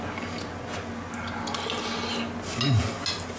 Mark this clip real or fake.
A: real